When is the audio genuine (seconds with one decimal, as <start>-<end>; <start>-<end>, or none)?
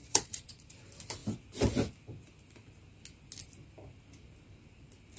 0.7-5.2